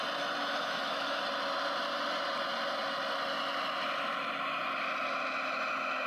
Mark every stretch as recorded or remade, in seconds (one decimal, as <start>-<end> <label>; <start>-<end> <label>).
0.0-0.4 recorded; 0.4-1.2 remade; 1.2-6.1 recorded